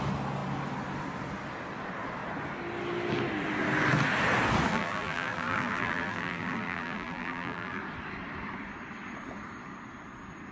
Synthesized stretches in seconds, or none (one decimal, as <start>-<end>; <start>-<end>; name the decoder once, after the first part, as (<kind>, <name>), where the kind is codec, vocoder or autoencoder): 4.7-7.8 (vocoder, BigVGAN v2)